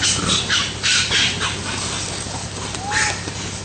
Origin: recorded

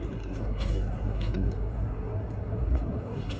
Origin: remade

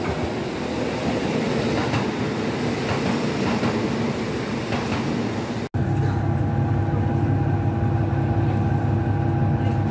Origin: recorded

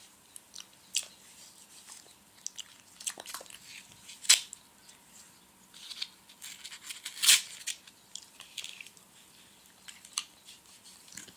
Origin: recorded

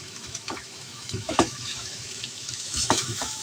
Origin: remade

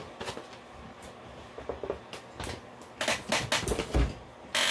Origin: recorded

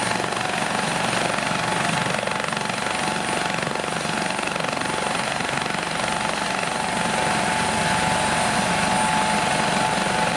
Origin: recorded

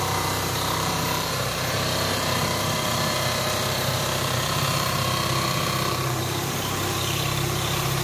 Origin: remade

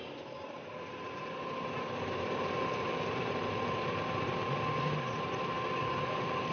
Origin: remade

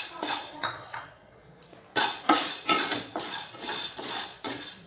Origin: remade